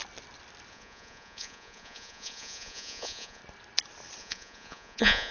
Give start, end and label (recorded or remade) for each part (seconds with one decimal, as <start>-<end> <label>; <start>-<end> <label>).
0.0-0.7 recorded; 0.7-3.4 remade; 3.4-4.2 recorded; 4.2-5.3 remade